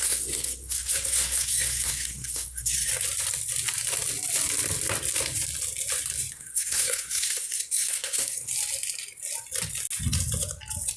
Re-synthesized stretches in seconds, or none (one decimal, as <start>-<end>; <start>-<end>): 0.0-2.9; 6.3-8.5